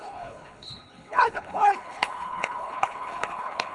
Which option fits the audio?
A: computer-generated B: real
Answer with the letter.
A